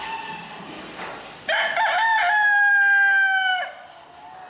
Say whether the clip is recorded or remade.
recorded